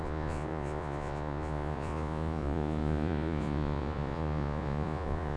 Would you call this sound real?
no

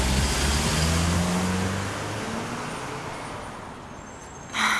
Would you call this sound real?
yes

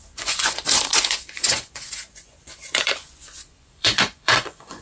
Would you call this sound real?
no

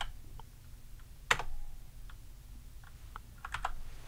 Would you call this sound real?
yes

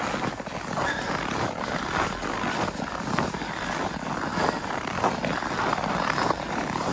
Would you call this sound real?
yes